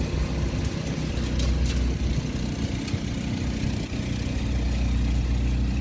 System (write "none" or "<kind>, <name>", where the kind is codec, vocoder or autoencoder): none